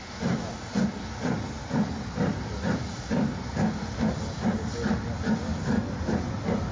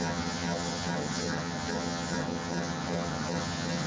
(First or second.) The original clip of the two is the first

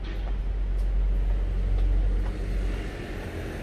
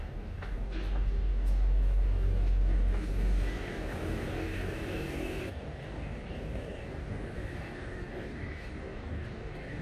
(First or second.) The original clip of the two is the first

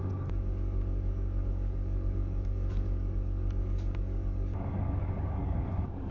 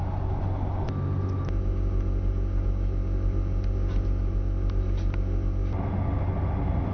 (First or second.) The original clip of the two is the second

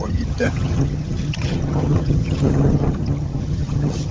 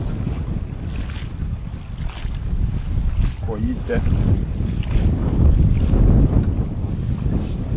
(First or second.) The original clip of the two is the second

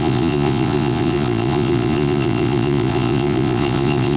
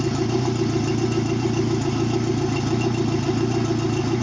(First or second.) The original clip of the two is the second